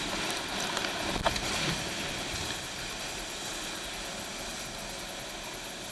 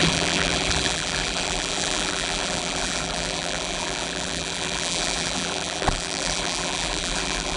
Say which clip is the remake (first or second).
second